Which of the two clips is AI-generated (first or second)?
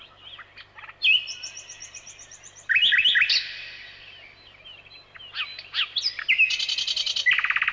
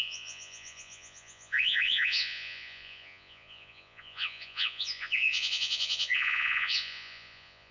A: second